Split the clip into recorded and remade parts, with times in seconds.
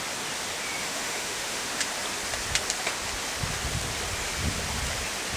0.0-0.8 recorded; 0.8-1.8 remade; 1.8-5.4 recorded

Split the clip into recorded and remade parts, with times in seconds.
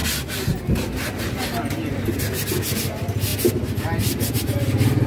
0.0-5.1 recorded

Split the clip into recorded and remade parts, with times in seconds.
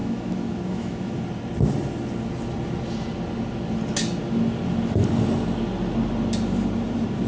0.0-1.2 remade; 1.2-7.3 recorded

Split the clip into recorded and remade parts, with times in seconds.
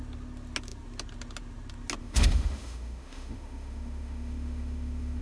0.0-2.0 recorded; 2.0-5.2 remade